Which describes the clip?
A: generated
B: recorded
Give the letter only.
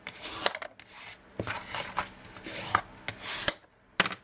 B